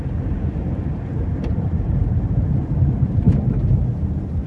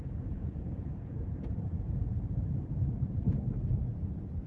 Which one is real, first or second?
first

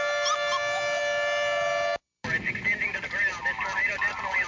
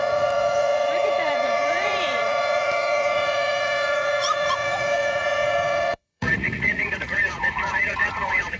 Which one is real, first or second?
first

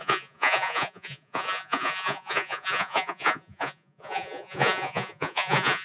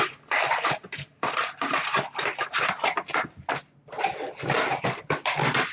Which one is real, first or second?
second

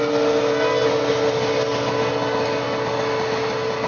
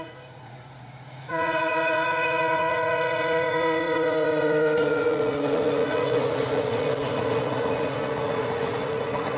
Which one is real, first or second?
first